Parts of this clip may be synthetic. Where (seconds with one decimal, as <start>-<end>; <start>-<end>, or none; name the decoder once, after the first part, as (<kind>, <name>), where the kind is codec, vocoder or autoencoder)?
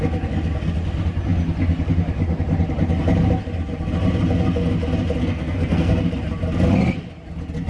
5.2-6.0 (codec, SNAC)